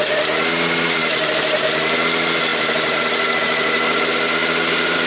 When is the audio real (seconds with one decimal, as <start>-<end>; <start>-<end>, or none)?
0.0-1.0; 1.8-2.5; 3.1-4.4